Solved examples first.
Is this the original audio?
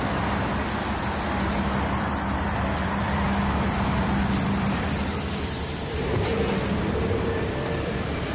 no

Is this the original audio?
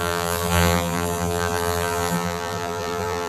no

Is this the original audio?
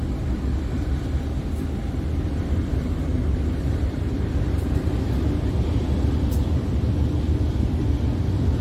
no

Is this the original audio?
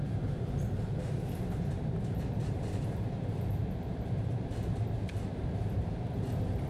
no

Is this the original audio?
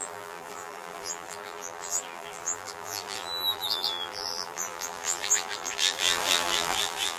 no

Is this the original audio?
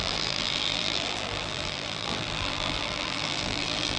no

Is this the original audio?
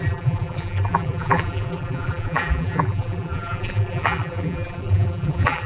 no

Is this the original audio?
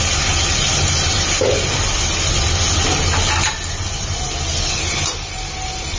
yes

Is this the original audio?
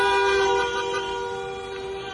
yes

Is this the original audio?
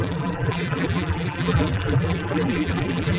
no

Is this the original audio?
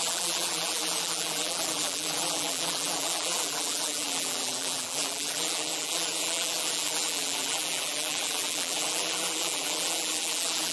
no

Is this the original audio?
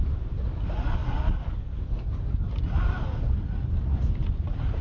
yes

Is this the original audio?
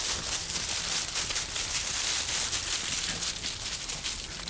yes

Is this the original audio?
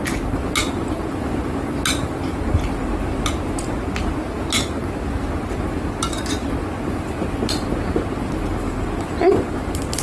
yes